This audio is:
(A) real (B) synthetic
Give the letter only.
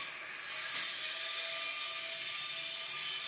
A